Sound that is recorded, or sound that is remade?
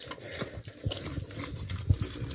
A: recorded